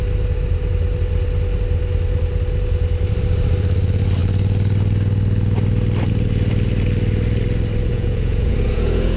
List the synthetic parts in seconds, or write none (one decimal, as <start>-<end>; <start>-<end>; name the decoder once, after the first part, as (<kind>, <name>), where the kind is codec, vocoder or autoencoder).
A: 7.9-9.2 (vocoder, Vocos)